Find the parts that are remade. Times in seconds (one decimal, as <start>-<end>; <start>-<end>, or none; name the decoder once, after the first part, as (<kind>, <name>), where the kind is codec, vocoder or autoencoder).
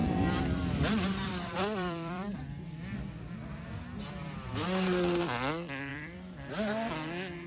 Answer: 0.0-2.4 (vocoder, BigVGAN v2); 5.9-6.9